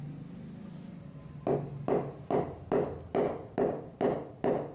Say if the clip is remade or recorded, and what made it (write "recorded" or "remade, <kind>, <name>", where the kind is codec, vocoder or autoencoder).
recorded